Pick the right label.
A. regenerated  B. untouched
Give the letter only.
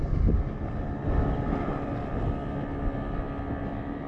B